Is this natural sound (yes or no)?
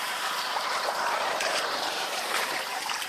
no